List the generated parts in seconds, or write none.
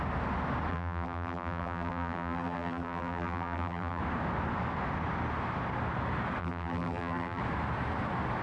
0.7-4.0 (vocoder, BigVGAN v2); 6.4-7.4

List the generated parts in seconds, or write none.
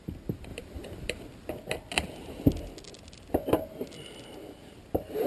none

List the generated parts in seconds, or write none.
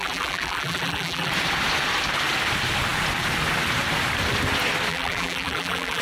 0.0-1.3 (vocoder, BigVGAN v2); 4.9-6.0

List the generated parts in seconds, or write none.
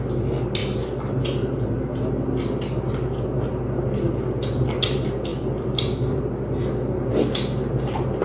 5.3-6.2 (vocoder, BigVGAN v2)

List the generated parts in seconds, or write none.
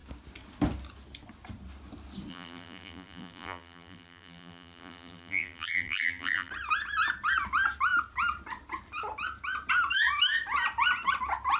2.3-6.5 (vocoder, BigVGAN v2)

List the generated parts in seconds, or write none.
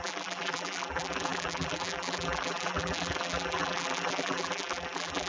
0.0-5.3 (vocoder, BigVGAN v2)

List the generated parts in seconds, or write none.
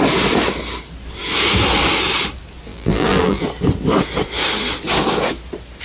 2.7-3.4 (vocoder, BigVGAN v2)